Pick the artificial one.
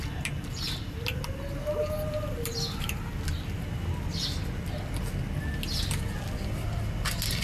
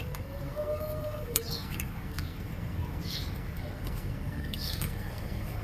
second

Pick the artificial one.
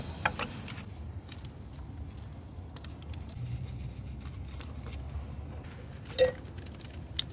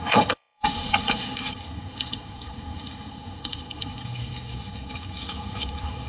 second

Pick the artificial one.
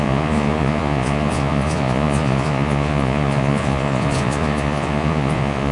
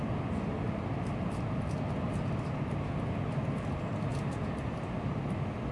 first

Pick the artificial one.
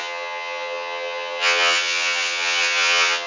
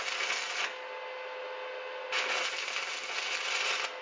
first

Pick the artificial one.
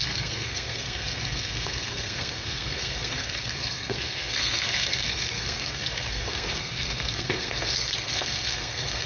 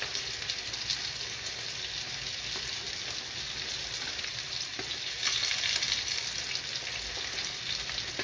first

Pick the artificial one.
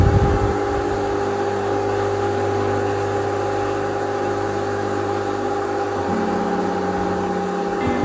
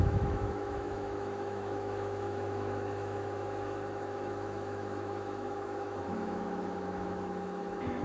second